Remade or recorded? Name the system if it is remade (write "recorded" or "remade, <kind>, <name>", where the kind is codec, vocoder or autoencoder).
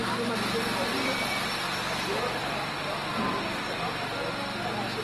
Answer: recorded